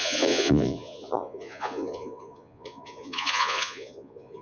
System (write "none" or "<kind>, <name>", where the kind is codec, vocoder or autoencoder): vocoder, Vocos